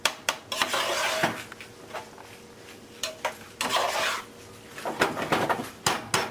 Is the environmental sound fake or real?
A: real